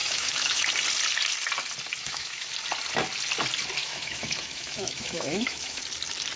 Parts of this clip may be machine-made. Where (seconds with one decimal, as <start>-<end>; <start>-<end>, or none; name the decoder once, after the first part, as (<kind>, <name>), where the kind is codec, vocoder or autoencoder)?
0.0-0.6 (autoencoder, DAC-VAE); 2.0-2.5; 3.8-5.8